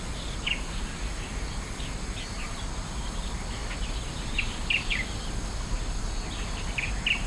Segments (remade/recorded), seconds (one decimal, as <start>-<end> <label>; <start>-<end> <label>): 0.0-7.3 recorded